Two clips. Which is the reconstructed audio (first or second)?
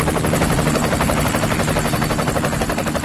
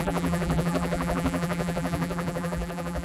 second